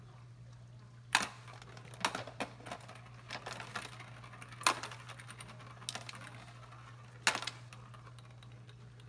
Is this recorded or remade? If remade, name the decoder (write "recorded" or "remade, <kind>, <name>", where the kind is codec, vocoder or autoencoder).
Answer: recorded